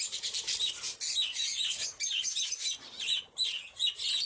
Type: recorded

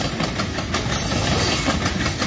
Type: recorded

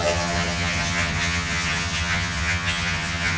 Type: remade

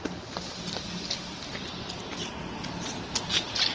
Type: recorded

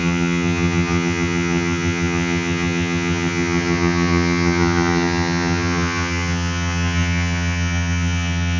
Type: remade